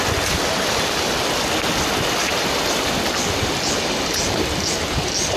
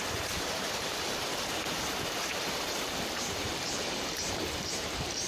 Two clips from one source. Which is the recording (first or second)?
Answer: first